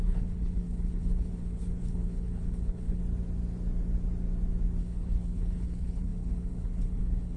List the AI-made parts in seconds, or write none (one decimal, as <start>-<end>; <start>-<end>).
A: 0.0-3.0; 4.8-7.4